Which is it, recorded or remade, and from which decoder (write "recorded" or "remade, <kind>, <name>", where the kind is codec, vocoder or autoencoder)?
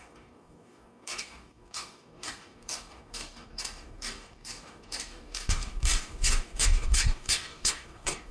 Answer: remade, codec, DAC